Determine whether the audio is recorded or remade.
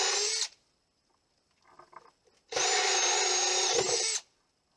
recorded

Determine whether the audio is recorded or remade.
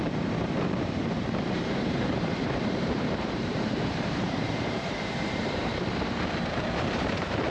remade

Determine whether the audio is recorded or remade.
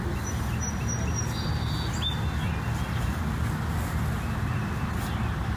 recorded